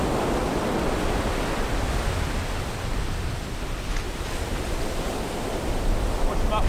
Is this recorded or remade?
recorded